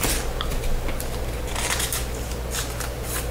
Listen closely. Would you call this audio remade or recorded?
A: recorded